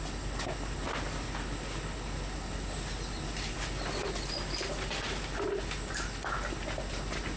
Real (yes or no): yes